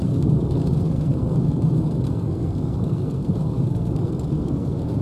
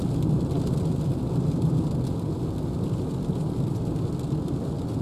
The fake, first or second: first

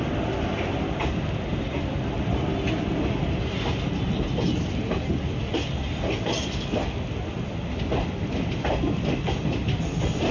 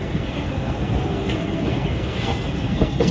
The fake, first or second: second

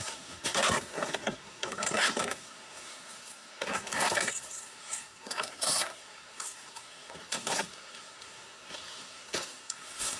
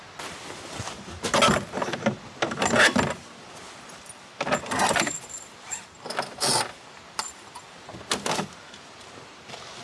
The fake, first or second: first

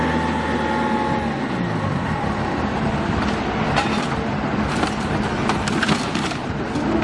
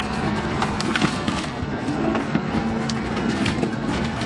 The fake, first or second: second